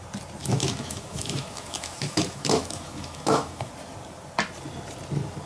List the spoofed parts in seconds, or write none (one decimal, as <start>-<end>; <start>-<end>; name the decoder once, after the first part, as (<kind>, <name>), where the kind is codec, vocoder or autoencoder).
0.4-3.7 (autoencoder, DAC-VAE)